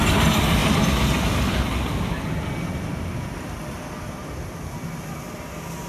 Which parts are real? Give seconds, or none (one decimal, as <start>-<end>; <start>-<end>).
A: 0.0-5.9